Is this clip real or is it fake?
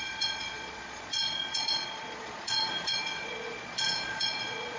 fake